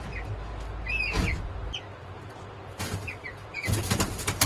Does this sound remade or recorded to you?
recorded